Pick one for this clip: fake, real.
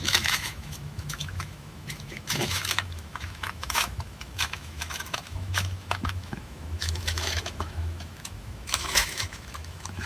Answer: fake